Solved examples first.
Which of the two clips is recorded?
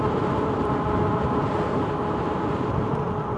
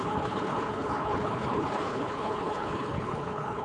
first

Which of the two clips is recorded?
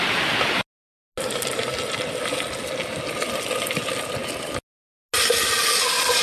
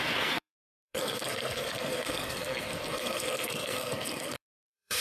first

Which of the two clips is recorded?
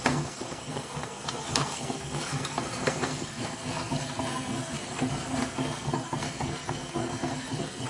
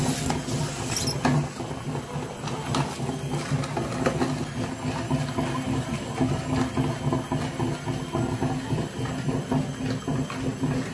second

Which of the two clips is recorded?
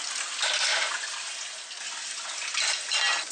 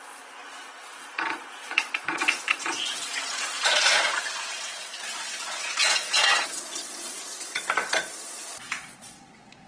first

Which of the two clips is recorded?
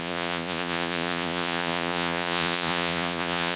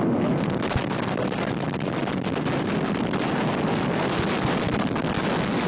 second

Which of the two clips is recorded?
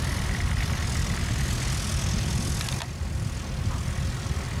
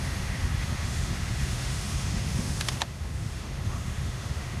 first